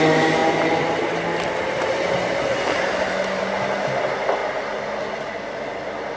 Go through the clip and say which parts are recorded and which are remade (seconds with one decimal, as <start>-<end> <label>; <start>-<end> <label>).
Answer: 0.0-6.2 recorded